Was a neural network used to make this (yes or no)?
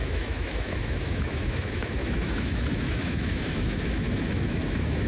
yes